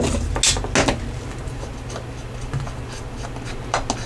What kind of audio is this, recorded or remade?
recorded